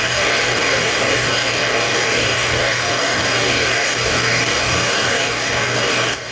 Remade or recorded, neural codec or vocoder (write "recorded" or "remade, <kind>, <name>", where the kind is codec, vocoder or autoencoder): remade, codec, DAC